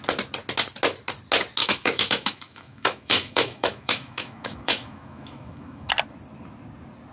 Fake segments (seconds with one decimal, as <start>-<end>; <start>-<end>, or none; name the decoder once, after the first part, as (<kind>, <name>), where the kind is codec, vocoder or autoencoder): 1.6-5.9 (autoencoder, DAC-VAE)